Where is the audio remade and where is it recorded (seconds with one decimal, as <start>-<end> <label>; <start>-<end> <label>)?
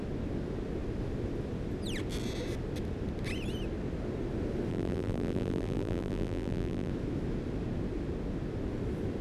0.0-4.7 recorded; 4.7-6.9 remade; 6.9-9.2 recorded